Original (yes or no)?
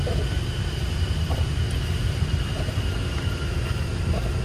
yes